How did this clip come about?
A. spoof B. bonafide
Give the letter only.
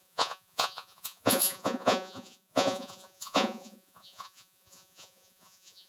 A